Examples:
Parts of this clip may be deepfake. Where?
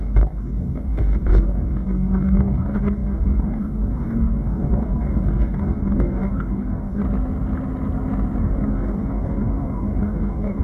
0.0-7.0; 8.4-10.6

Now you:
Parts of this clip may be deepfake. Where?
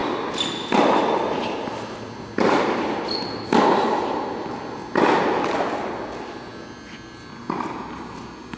none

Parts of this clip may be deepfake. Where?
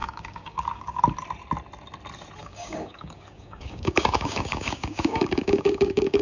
0.0-1.0; 2.4-6.2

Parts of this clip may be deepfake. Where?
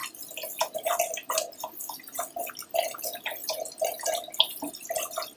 none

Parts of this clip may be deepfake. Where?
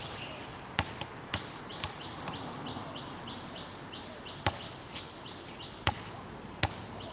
none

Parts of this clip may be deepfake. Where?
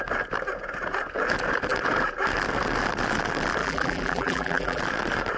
3.6-4.8